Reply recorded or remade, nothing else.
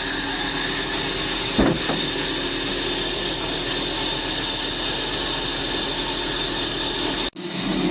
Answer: recorded